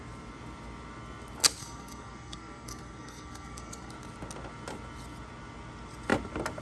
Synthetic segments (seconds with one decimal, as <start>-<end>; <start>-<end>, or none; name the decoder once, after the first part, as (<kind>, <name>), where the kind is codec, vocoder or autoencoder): 1.6-3.9 (codec, SNAC)